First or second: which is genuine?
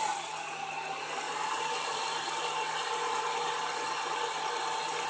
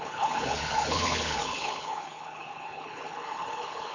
first